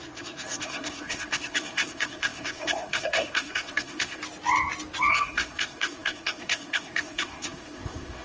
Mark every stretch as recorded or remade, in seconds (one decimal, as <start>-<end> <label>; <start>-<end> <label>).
0.0-4.2 remade; 4.2-5.1 recorded; 5.1-8.2 remade